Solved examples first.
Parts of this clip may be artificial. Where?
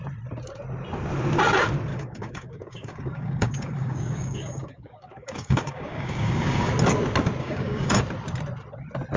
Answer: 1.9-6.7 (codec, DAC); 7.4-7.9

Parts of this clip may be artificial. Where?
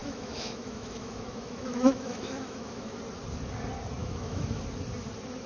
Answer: 0.0-3.0 (autoencoder, DAC-VAE); 4.0-4.6